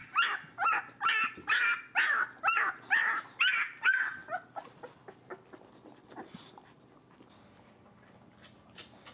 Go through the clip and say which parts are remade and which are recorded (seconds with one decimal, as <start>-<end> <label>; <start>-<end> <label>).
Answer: 0.0-9.1 recorded